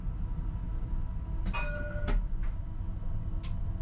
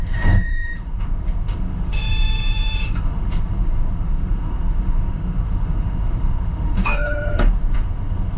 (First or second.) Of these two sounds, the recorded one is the first